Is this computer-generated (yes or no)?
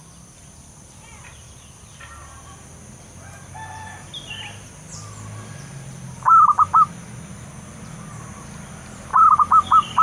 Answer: no